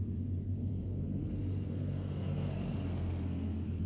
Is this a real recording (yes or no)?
no